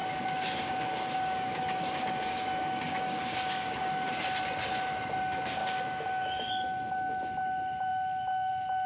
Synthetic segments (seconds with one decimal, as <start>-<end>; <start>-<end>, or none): 0.0-4.1; 5.6-6.5